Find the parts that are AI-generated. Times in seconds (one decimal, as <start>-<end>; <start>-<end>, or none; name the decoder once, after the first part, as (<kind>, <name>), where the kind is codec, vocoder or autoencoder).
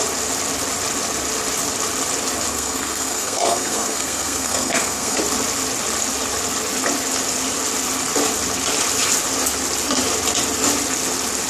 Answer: 2.5-5.2 (codec, SNAC)